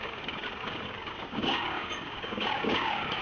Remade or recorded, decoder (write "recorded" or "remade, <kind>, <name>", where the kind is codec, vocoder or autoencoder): remade, codec, DAC